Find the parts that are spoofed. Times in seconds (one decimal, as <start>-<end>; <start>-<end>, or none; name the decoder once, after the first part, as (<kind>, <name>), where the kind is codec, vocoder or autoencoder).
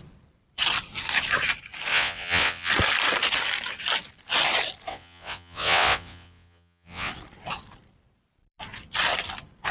1.9-2.7 (vocoder, WaveNeXt); 4.9-7.1